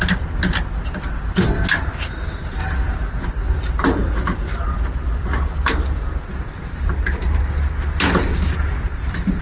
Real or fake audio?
real